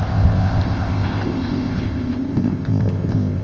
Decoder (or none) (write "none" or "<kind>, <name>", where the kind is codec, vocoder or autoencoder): codec, ZipCodec